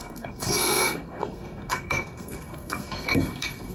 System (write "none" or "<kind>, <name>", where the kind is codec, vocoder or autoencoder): codec, SNAC